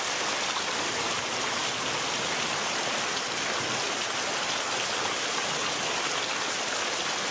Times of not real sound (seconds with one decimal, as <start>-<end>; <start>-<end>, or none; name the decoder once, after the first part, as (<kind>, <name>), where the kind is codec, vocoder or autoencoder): none